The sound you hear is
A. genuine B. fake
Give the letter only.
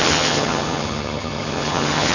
B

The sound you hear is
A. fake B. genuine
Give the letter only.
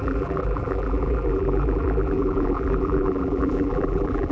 A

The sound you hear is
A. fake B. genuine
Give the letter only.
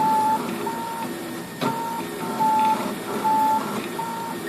A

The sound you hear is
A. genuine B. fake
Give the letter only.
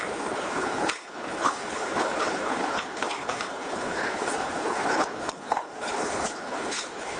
B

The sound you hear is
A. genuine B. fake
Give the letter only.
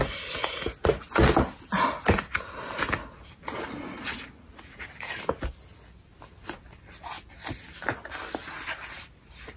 A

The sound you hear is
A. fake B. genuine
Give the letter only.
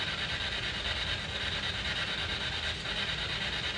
B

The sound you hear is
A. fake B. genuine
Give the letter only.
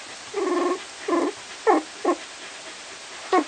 B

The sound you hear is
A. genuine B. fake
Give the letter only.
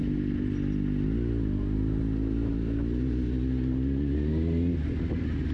A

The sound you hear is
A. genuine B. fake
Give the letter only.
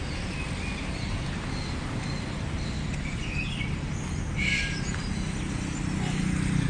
A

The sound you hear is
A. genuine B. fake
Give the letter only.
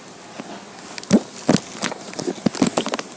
A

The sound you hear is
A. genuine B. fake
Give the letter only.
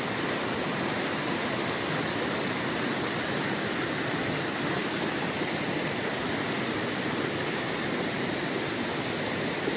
A